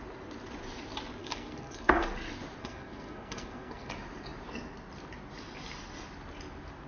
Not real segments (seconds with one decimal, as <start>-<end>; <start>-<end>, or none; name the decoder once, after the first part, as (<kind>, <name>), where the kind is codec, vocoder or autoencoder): 1.2-2.1 (codec, SNAC); 2.6-3.9